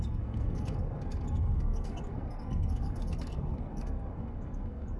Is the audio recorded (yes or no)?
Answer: no